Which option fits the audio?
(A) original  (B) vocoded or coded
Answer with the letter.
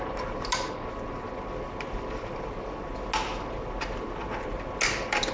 A